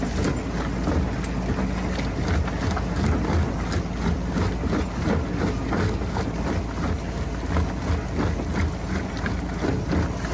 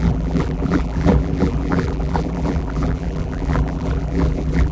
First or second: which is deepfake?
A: second